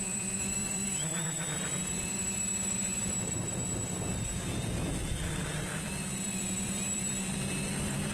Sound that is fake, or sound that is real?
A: fake